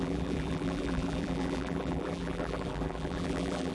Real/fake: fake